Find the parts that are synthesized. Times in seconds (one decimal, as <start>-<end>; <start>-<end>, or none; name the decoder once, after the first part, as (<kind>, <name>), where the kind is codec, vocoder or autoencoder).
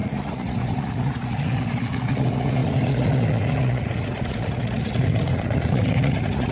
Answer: 0.0-6.5 (vocoder, Vocos)